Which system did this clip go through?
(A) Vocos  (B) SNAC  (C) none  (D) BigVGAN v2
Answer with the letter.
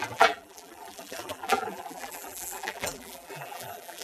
D